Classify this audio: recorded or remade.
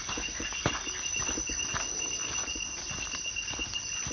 recorded